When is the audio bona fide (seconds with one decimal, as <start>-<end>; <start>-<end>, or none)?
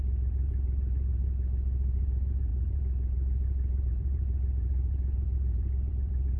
1.2-2.0